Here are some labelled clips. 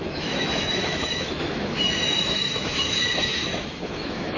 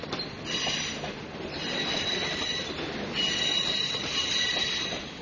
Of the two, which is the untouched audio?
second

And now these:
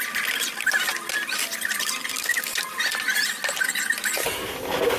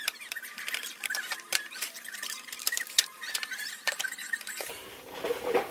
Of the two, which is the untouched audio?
first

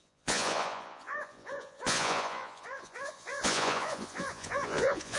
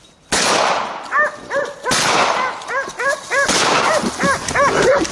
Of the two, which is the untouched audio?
second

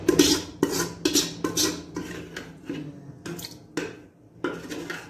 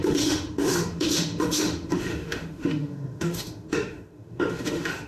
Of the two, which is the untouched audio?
first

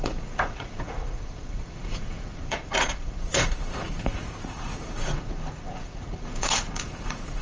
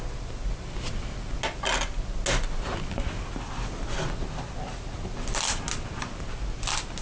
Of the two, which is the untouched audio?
second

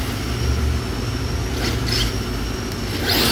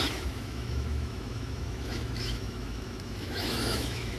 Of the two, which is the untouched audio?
first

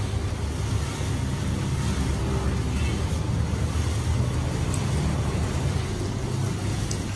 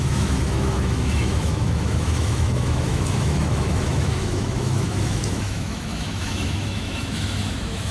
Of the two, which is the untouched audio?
first